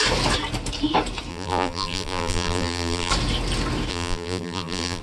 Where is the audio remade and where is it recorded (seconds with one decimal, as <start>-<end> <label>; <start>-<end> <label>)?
0.0-1.3 recorded; 1.3-3.1 remade; 3.1-3.9 recorded; 3.9-5.0 remade